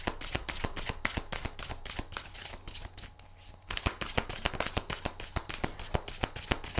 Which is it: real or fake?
real